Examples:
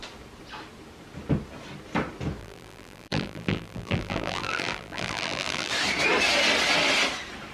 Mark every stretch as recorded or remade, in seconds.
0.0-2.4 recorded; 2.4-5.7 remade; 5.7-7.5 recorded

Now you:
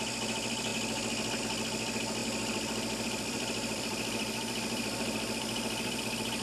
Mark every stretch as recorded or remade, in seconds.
0.0-2.2 recorded; 2.2-6.0 remade; 6.0-6.4 recorded

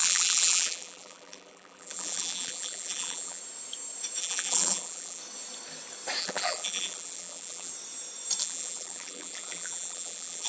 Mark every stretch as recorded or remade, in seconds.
0.0-3.4 remade; 3.4-4.2 recorded; 4.2-5.2 remade; 5.2-6.2 recorded; 6.2-7.7 remade; 7.7-8.4 recorded; 8.4-10.5 remade

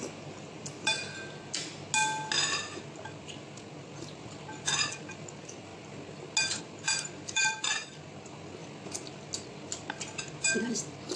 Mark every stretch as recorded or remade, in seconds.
0.0-3.2 recorded; 3.2-5.7 remade; 5.7-6.6 recorded; 6.6-8.6 remade; 8.6-10.4 recorded; 10.4-11.2 remade